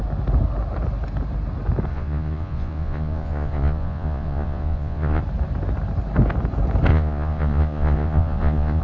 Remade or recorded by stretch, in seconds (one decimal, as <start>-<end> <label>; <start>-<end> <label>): 0.0-1.9 recorded; 1.9-5.2 remade; 5.2-6.9 recorded; 6.9-8.8 remade